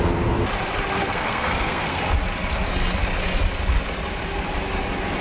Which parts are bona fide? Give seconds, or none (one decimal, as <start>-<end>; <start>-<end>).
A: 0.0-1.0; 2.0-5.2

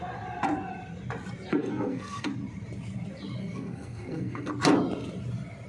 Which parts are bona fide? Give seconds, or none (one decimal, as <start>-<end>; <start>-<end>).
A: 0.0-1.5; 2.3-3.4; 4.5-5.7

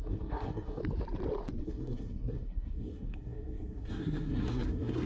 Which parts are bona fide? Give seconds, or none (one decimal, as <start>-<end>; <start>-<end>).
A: 0.8-1.6

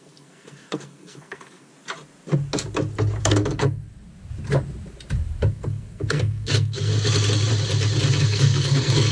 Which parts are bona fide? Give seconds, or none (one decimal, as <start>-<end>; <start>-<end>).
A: 1.7-3.2; 3.8-5.5; 6.9-8.2

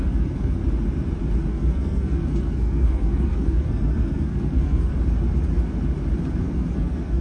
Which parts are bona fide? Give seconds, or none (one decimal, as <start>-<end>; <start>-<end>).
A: 0.6-1.5; 4.9-6.4